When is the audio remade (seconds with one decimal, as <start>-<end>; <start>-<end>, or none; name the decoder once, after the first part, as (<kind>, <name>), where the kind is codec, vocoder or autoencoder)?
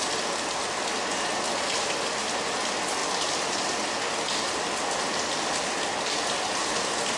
3.0-5.3 (vocoder, BigVGAN v2)